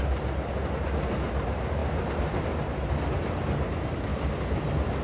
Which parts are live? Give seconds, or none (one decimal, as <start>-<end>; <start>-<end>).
0.0-5.0